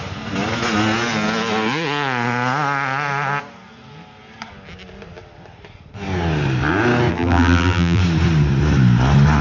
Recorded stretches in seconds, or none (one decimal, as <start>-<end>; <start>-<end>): 0.0-7.1; 8.0-9.4